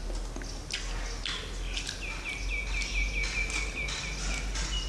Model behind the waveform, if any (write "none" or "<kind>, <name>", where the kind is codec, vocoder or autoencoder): none